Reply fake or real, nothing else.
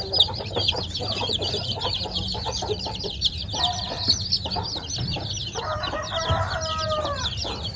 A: fake